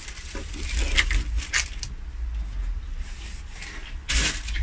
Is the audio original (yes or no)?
yes